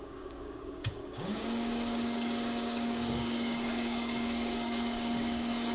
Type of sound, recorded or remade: remade